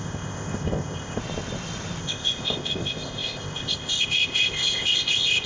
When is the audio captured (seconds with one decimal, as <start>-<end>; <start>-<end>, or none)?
1.2-2.0

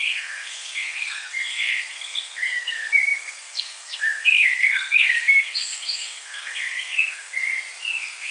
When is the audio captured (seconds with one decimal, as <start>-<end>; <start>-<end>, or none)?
7.4-7.9

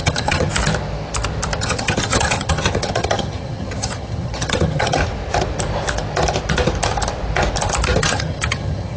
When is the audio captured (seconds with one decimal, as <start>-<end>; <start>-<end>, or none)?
0.5-1.6; 5.0-8.0

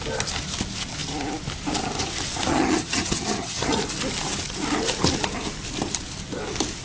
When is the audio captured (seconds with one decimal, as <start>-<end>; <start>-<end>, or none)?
0.0-2.5; 3.8-6.8

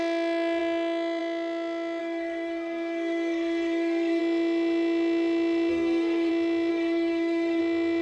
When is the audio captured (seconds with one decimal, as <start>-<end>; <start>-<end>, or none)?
0.0-2.0; 4.2-5.7; 6.3-6.7; 7.6-8.0